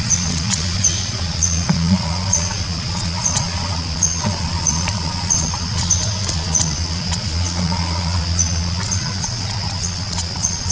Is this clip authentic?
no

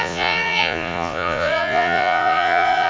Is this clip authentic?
no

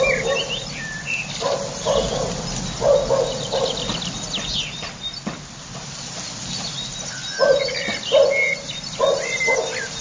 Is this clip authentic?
yes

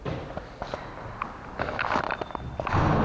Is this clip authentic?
yes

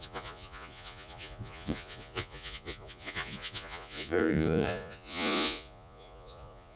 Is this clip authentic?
no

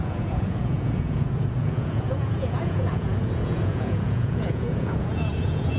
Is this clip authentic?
no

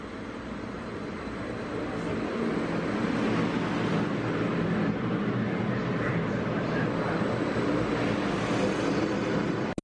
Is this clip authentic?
yes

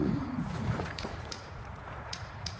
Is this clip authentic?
no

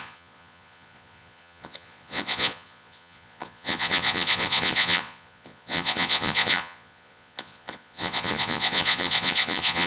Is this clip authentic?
no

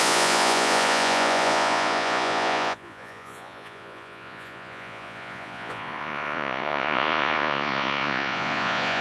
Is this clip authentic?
no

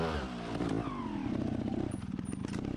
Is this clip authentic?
yes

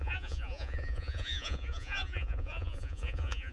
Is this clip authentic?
no